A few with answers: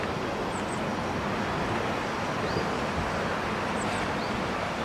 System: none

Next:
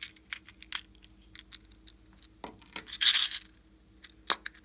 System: none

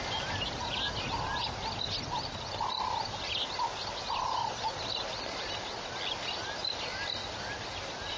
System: none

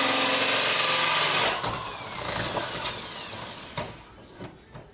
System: none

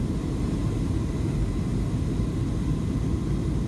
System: none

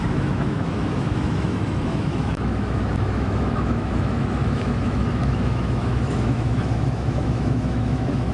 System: autoencoder, DAC-VAE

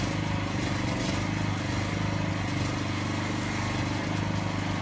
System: none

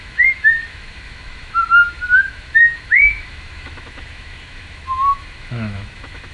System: autoencoder, DAC-VAE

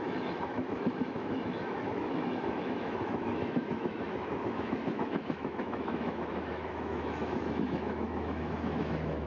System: autoencoder, DAC-VAE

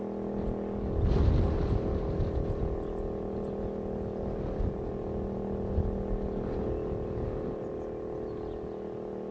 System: none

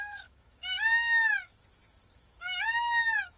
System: autoencoder, DAC-VAE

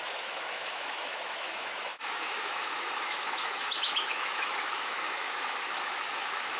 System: autoencoder, DAC-VAE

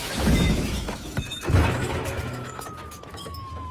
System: autoencoder, DAC-VAE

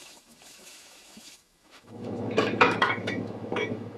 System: autoencoder, DAC-VAE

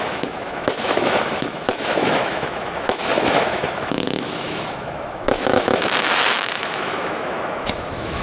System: autoencoder, DAC-VAE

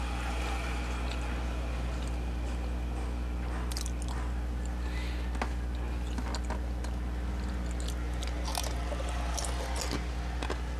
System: none